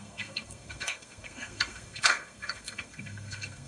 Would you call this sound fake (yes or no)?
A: yes